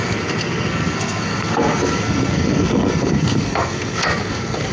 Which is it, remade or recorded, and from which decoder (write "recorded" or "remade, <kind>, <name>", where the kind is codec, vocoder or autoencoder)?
remade, codec, SNAC